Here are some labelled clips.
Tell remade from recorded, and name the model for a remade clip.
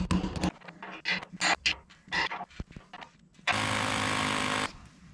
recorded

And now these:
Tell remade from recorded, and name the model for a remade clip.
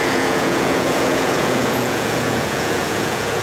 remade, vocoder, Vocos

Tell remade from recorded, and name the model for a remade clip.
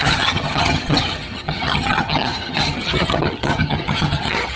remade, vocoder, HiFi-GAN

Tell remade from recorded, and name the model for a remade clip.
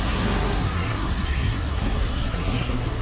remade, codec, SNAC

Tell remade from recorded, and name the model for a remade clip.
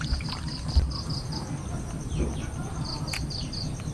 recorded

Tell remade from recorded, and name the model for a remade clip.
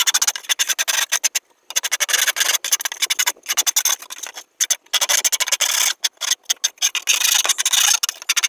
recorded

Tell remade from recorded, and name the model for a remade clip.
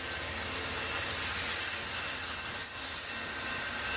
recorded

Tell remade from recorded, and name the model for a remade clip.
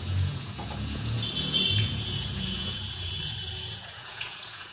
remade, vocoder, Vocos